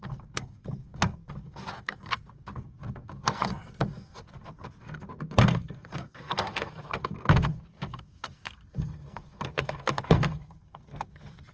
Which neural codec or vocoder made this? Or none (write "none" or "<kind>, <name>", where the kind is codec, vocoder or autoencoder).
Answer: codec, SNAC